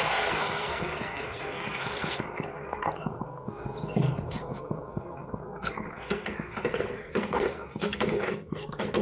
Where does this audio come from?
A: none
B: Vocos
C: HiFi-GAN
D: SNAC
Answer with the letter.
D